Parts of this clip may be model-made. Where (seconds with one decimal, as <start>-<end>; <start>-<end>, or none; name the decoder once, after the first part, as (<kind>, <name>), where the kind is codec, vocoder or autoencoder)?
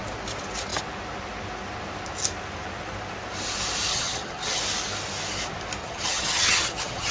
3.9-4.6 (vocoder, HiFi-GAN); 5.8-7.1